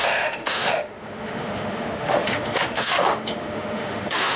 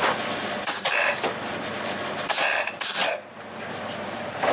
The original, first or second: second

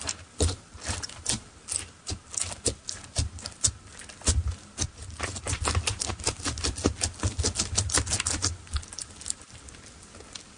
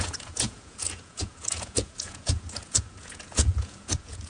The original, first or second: first